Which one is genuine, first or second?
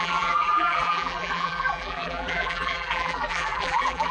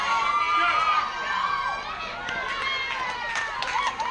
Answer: second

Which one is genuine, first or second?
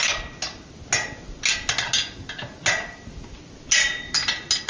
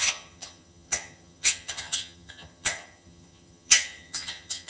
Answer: first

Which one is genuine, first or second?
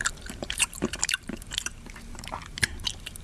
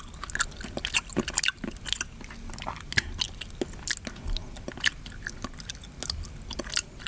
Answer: second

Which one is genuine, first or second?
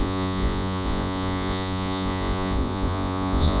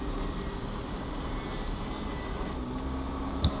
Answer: second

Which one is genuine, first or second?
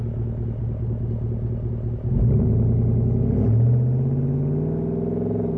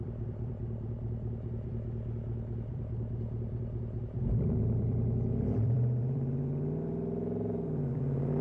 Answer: first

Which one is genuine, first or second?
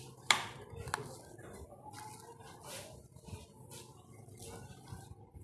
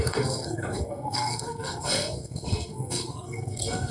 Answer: first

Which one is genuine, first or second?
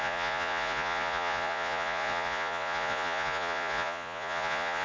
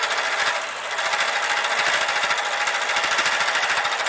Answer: second